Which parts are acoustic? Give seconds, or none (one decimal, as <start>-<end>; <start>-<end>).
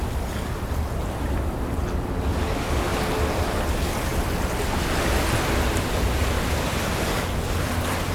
0.0-8.1